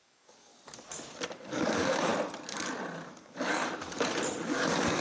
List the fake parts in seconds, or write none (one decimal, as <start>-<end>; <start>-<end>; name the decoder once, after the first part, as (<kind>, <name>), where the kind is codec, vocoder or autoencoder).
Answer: 0.0-0.5 (codec, DAC); 1.4-2.1; 3.2-3.6; 4.5-5.0